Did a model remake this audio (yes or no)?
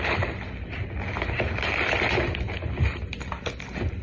no